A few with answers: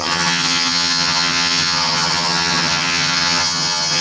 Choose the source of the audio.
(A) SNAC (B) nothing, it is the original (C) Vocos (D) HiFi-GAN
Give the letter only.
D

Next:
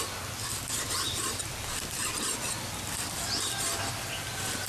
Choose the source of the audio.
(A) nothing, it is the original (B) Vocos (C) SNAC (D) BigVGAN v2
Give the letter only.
A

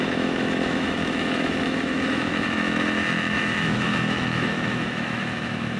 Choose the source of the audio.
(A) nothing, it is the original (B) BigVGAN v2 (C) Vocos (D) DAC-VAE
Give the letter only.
D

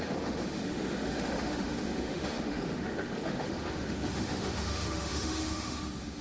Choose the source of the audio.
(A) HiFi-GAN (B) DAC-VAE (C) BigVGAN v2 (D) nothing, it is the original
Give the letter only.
B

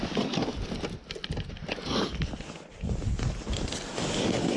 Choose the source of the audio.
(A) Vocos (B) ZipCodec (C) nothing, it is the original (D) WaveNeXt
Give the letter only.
C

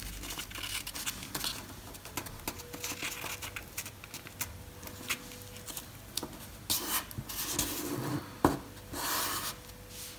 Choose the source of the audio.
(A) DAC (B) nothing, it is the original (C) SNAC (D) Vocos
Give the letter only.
B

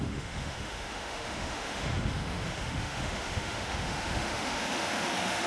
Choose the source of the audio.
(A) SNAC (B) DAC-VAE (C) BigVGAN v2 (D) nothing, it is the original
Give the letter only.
B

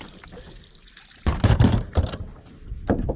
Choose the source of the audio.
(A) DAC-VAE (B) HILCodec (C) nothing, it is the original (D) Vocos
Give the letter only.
C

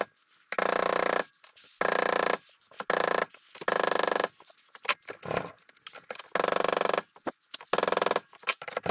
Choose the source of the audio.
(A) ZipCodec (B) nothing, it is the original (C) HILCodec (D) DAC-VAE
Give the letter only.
B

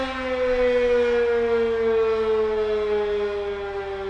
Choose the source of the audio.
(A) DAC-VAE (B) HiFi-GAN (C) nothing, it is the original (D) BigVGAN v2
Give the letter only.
C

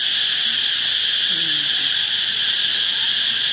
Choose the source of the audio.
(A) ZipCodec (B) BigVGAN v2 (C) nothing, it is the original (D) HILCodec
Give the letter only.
C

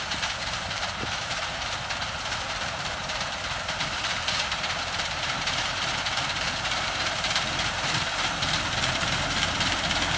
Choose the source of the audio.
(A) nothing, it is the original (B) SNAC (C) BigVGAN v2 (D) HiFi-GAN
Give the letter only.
C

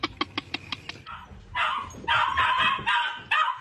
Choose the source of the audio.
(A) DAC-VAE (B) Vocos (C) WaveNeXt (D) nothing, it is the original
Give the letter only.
D